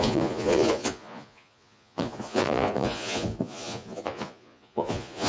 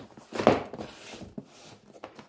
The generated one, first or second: first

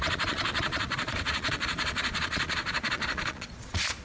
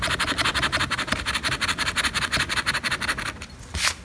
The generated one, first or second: first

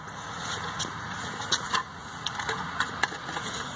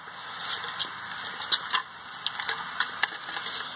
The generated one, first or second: first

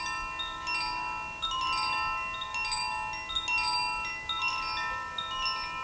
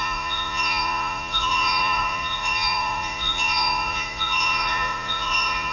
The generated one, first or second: second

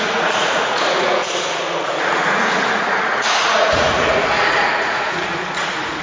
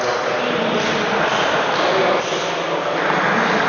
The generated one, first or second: first